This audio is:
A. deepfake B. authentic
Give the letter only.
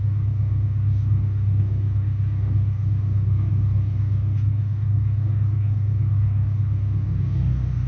A